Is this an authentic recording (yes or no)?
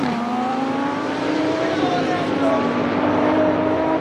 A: no